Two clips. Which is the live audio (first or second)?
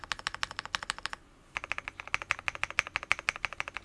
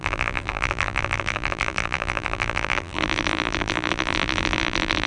first